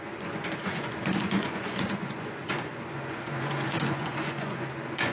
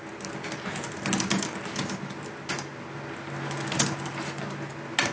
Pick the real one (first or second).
second